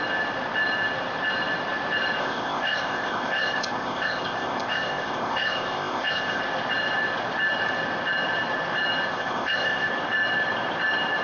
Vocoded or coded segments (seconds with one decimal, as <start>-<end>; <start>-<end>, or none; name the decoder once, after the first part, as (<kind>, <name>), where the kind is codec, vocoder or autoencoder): 2.2-6.4 (codec, ZipCodec); 9.1-9.9